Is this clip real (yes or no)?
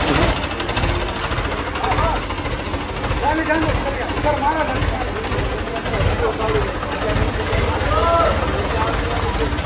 yes